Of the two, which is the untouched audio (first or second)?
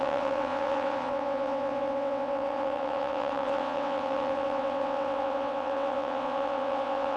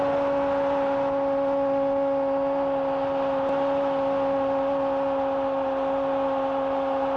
second